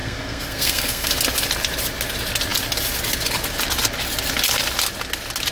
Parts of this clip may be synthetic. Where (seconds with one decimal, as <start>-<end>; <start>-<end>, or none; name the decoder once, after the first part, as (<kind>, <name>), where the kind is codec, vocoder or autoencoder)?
0.0-1.1 (codec, SNAC)